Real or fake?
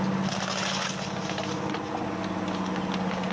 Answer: real